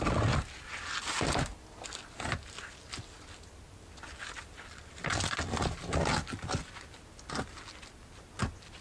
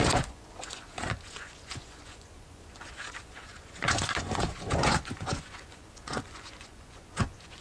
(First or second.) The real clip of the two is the first